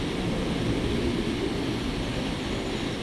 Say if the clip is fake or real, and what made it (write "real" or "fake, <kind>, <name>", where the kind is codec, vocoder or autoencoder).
real